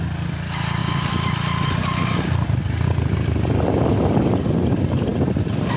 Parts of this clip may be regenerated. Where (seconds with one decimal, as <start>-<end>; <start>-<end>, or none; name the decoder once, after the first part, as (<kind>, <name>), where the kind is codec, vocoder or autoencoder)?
none